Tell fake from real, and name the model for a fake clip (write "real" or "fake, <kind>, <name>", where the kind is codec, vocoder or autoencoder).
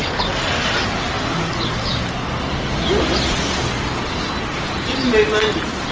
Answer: real